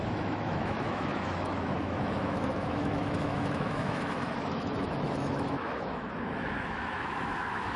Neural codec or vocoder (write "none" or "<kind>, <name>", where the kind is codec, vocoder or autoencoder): autoencoder, DAC-VAE